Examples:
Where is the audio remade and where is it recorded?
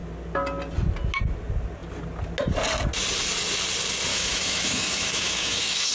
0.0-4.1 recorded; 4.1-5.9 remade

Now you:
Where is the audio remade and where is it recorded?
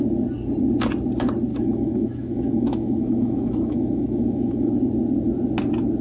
0.0-1.5 recorded; 1.5-4.7 remade; 4.7-6.0 recorded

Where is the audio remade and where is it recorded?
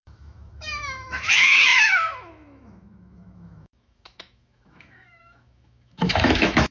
0.0-6.7 remade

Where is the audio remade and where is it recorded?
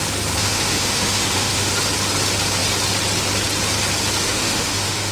0.0-0.4 recorded; 0.4-1.8 remade; 1.8-4.2 recorded; 4.2-5.1 remade